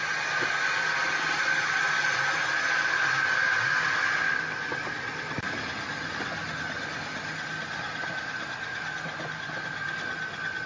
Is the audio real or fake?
real